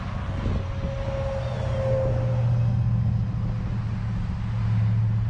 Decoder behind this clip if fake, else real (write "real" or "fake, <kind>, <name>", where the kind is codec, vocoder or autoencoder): real